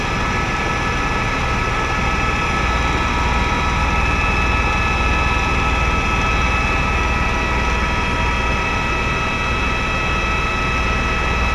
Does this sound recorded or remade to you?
recorded